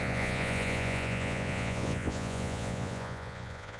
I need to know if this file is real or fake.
fake